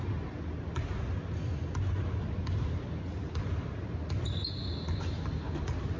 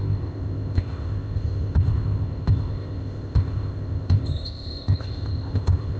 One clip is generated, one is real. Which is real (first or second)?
first